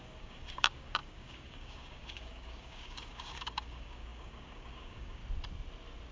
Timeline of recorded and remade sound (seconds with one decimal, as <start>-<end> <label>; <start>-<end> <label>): 0.0-5.2 remade; 5.2-6.1 recorded

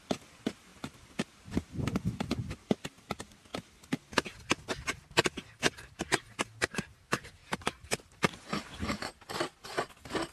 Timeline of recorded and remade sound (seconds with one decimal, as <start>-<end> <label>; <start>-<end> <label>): 0.0-7.4 recorded; 7.4-8.5 remade; 8.5-10.3 recorded

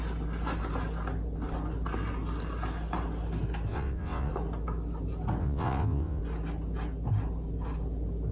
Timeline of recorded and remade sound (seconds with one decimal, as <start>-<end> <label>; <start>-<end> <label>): 0.0-3.7 recorded; 3.7-4.3 remade; 4.3-5.4 recorded; 5.4-6.2 remade; 6.2-8.3 recorded

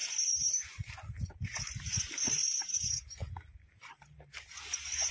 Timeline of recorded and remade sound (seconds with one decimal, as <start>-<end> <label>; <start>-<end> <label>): 0.0-0.5 recorded; 0.5-5.1 remade